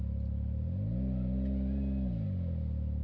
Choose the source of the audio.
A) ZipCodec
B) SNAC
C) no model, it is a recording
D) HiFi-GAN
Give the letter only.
C